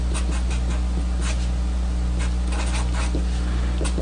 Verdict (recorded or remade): recorded